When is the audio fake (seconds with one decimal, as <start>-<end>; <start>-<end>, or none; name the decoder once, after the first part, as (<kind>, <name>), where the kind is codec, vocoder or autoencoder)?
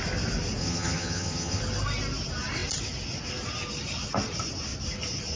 0.6-1.6 (vocoder, HiFi-GAN)